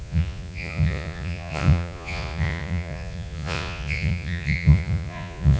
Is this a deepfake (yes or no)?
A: yes